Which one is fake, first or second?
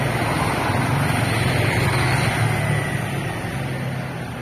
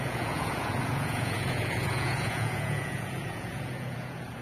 second